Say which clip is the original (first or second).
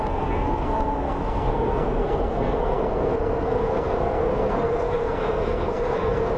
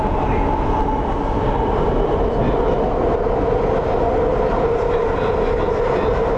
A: second